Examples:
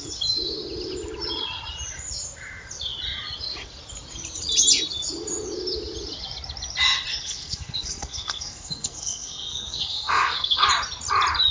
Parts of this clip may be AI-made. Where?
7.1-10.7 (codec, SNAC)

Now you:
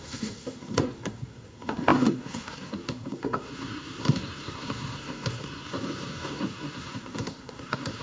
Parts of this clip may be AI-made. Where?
0.0-8.0 (codec, SNAC)

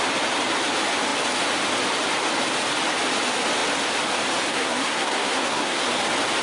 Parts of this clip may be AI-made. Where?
4.5-5.9 (codec, SNAC)

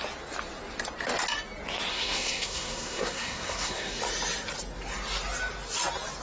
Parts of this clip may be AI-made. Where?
1.9-4.0 (codec, SNAC)

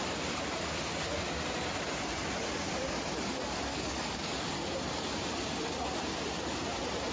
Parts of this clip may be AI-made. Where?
3.7-4.3 (codec, DAC)

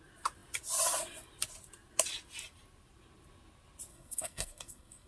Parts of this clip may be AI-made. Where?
3.9-5.1 (codec, SNAC)